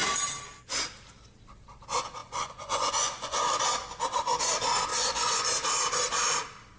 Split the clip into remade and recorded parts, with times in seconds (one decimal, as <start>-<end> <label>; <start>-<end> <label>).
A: 0.0-2.2 recorded; 2.2-3.4 remade; 3.4-4.9 recorded; 4.9-5.5 remade; 5.5-6.8 recorded